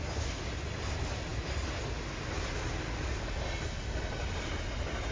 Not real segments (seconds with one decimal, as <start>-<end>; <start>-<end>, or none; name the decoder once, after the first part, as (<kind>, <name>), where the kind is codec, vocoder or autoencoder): none